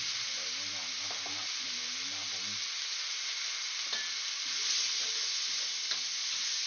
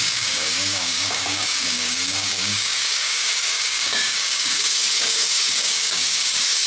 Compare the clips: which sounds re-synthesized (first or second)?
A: second